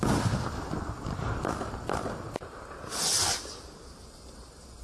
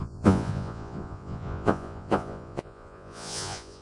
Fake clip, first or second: second